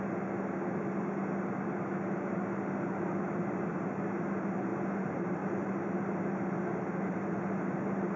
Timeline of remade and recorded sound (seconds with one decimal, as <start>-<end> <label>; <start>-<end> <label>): 0.0-8.2 recorded